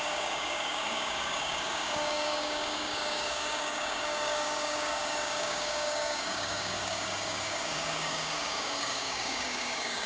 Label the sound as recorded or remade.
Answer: remade